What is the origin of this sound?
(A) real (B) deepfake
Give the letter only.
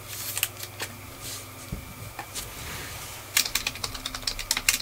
A